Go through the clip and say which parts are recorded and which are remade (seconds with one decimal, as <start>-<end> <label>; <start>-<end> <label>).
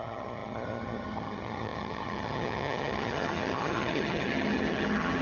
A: 0.0-5.2 remade